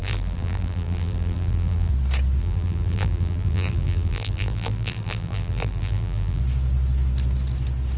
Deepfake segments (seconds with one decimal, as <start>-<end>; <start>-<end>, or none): 0.0-1.9; 2.4-6.4